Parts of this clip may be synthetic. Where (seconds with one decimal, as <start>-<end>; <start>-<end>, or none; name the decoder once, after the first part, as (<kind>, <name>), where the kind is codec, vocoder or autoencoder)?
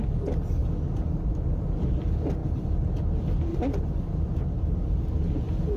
2.4-3.0 (vocoder, BigVGAN v2); 3.5-5.1